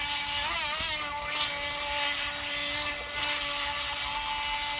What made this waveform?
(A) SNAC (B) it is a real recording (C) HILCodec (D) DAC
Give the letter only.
B